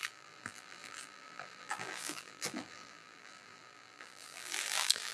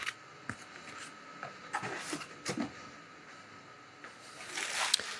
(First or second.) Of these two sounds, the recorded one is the second